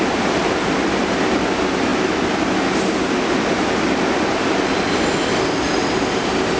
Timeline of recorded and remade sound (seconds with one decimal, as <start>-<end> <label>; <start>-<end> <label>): 0.0-6.6 recorded